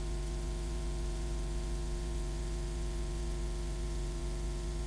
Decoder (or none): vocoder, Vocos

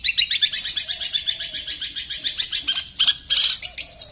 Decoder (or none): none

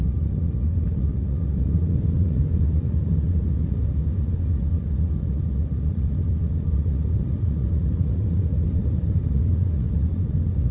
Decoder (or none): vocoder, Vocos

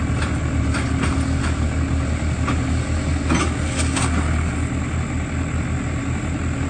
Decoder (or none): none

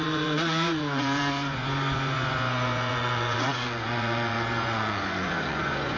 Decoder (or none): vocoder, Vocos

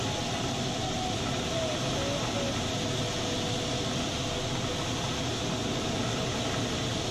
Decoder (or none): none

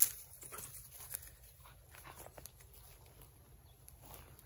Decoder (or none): none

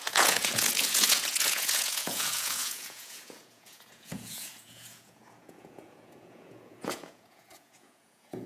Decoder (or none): vocoder, Vocos